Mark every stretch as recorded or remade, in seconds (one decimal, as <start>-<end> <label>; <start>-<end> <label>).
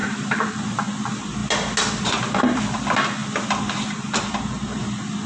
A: 0.0-0.8 remade; 0.8-5.3 recorded